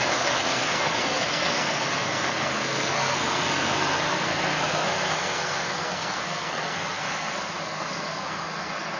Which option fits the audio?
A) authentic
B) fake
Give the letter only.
B